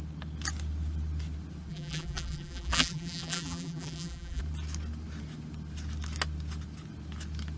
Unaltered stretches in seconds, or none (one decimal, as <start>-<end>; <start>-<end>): 0.0-1.7; 4.4-7.6